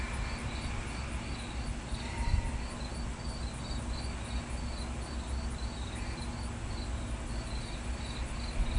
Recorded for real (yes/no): yes